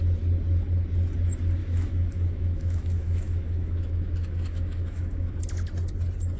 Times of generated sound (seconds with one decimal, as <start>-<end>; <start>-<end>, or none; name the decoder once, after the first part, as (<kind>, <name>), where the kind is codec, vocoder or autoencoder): 1.6-5.4 (autoencoder, DAC-VAE)